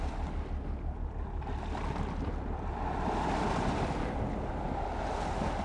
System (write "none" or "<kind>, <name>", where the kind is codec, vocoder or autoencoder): none